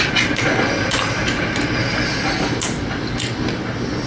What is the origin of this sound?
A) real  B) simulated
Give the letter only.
A